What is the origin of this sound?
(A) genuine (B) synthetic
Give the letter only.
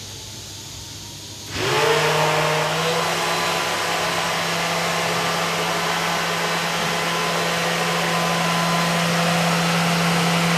A